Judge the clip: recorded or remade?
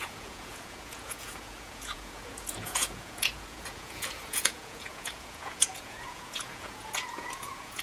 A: remade